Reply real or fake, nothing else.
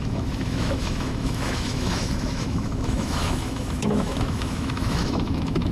fake